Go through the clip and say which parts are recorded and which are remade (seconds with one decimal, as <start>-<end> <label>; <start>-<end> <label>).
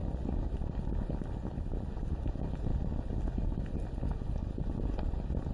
0.0-5.5 recorded